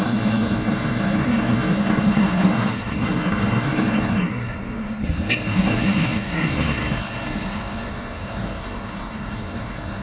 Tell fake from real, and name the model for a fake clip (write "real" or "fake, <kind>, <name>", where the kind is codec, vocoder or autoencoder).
fake, codec, SNAC